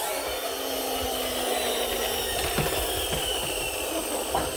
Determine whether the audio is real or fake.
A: real